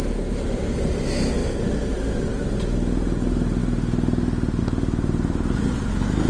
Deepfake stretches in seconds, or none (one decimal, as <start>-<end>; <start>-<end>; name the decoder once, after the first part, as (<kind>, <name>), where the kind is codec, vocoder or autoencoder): none